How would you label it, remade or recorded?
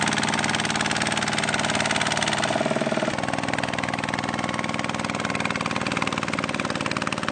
recorded